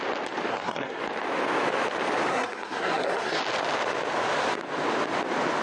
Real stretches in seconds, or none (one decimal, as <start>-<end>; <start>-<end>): 0.0-0.5; 1.0-2.3; 3.4-5.6